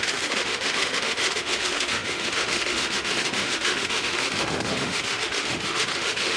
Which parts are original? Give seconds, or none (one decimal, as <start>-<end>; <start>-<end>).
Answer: none